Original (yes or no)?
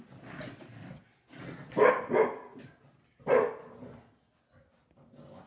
yes